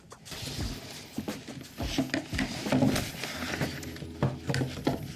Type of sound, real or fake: real